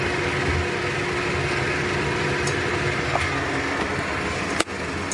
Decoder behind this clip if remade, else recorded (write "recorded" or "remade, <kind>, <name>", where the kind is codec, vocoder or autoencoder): recorded